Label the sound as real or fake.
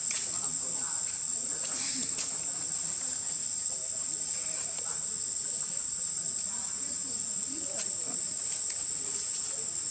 fake